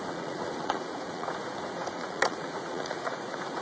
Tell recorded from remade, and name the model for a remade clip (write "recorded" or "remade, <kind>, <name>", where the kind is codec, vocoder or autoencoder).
remade, vocoder, Vocos